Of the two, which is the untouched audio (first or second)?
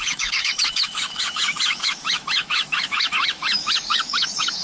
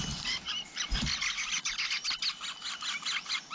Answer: second